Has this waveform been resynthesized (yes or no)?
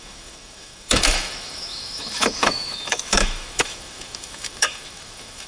yes